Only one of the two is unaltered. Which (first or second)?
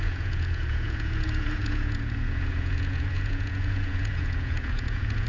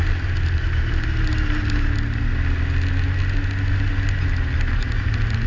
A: second